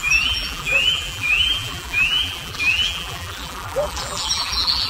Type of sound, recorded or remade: remade